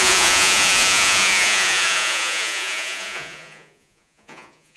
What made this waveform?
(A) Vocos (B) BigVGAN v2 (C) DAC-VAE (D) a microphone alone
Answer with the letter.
A